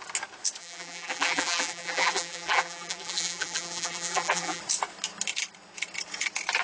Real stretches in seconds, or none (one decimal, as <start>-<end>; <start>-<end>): 0.0-0.6; 4.6-6.6